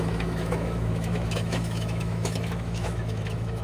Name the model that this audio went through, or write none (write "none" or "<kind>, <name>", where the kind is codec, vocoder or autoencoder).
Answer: autoencoder, DAC-VAE